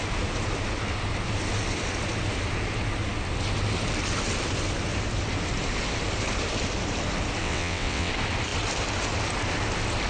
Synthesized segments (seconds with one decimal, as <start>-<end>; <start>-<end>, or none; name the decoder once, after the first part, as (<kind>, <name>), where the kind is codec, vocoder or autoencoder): 7.4-8.1 (vocoder, WaveNeXt)